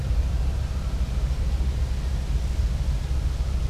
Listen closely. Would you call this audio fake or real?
real